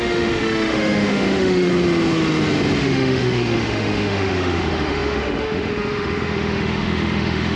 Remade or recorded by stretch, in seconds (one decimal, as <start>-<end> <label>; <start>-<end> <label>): 0.0-1.7 remade; 1.7-2.8 recorded; 2.8-7.6 remade